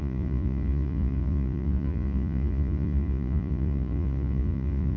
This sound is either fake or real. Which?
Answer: fake